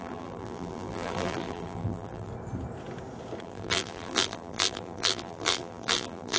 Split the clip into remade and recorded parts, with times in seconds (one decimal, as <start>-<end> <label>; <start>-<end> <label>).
0.0-2.3 remade; 2.3-3.4 recorded; 3.4-6.4 remade